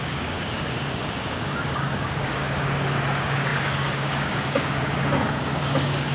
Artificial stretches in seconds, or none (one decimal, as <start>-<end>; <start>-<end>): 0.0-6.1